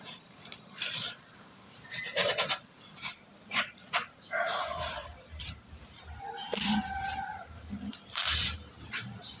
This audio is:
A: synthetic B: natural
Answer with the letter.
A